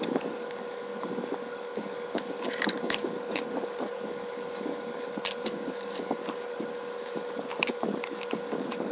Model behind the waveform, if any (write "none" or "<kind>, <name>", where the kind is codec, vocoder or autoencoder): codec, DAC